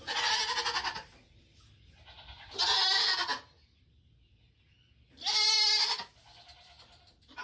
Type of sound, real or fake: real